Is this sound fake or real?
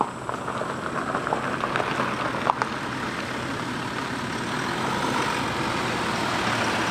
real